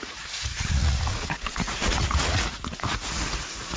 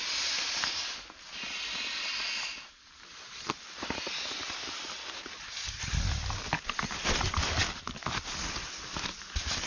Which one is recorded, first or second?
second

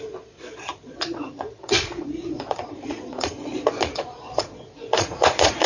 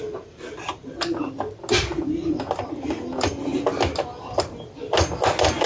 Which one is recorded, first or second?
second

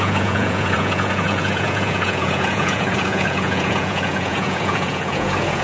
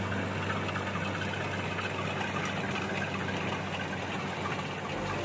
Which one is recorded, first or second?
second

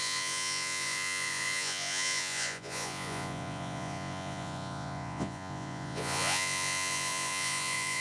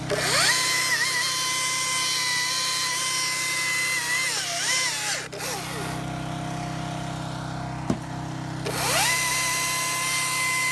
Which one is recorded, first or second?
second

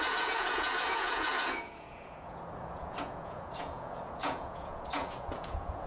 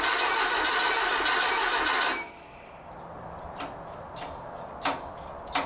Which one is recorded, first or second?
second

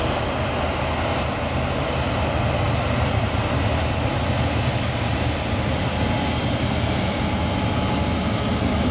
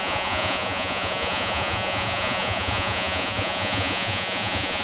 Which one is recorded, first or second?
first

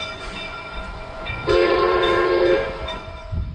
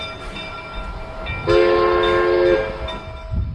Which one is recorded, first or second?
second